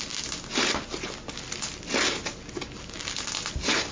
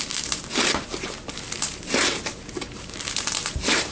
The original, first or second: first